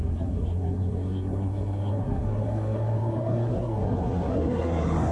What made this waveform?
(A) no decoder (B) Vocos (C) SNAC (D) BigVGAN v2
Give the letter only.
C